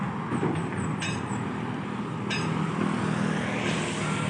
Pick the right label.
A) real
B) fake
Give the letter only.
A